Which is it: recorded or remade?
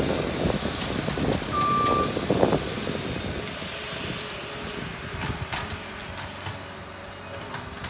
recorded